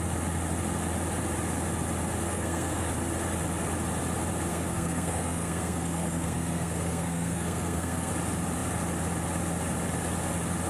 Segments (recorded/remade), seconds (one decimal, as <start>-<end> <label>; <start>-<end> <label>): 0.0-2.3 recorded; 2.3-2.9 remade; 2.9-4.5 recorded; 4.5-8.1 remade; 8.1-10.7 recorded